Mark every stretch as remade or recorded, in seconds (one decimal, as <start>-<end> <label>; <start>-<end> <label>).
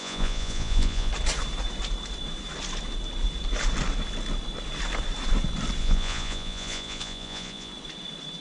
0.0-1.1 remade; 1.1-5.8 recorded; 5.8-7.7 remade; 7.7-8.4 recorded